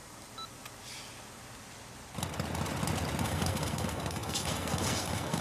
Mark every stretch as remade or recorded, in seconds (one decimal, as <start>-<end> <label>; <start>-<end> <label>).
0.0-3.2 recorded; 3.2-5.4 remade